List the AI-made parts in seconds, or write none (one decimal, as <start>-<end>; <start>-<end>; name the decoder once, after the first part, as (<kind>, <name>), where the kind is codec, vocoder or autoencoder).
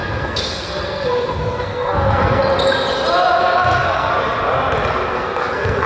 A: 0.0-2.4 (codec, SNAC); 3.4-4.1; 5.1-5.9